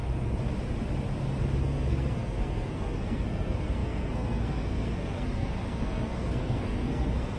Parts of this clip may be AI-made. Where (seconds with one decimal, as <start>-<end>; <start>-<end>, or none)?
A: 1.6-7.4